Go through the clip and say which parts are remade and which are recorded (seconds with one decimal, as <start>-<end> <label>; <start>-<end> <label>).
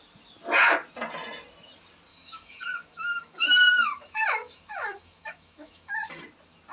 0.0-2.1 recorded; 2.1-6.1 remade; 6.1-6.7 recorded